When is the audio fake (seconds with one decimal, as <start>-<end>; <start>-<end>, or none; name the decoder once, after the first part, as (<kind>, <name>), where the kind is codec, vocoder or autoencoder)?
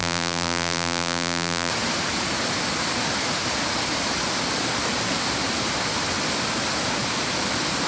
0.0-1.7 (vocoder, BigVGAN v2)